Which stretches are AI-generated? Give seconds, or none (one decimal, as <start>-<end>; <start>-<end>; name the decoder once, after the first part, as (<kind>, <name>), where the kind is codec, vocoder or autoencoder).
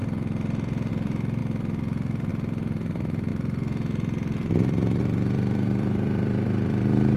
0.9-1.4 (vocoder, BigVGAN v2); 2.3-7.2